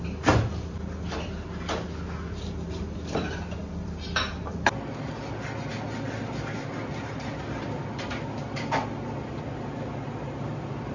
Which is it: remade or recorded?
recorded